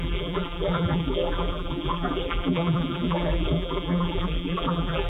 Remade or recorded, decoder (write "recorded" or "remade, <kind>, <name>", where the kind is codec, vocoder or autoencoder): remade, vocoder, BigVGAN v2